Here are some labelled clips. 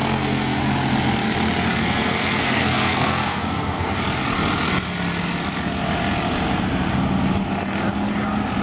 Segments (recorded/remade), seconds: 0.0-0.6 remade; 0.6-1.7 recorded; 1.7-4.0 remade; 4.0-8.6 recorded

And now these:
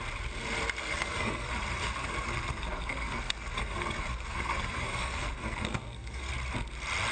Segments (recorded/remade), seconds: 0.0-0.8 recorded; 0.8-1.5 remade; 1.5-2.0 recorded; 2.0-6.3 remade; 6.3-7.1 recorded

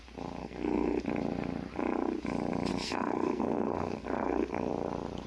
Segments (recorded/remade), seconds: 0.0-0.4 recorded; 0.4-1.0 remade; 1.0-2.7 recorded; 2.7-4.7 remade; 4.7-5.3 recorded

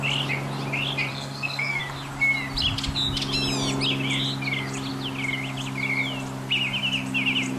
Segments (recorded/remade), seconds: 0.0-1.1 recorded; 1.1-1.8 remade; 1.8-7.6 recorded